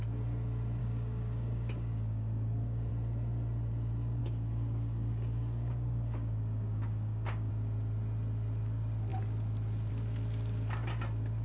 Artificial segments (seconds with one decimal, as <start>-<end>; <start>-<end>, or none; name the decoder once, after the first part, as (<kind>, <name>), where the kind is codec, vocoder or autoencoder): 0.8-2.9 (codec, DAC); 4.2-7.5